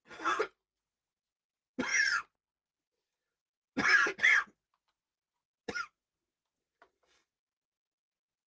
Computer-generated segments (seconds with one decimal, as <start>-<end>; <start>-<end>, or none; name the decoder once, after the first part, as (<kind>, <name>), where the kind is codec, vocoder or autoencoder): none